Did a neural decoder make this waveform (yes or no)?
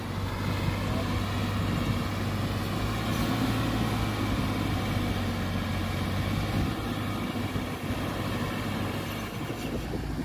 no